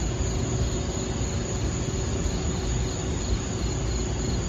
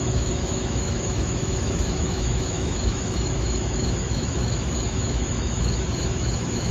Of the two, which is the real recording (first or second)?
first